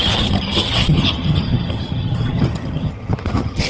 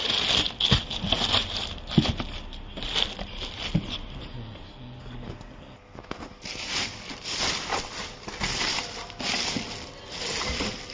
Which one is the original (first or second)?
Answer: second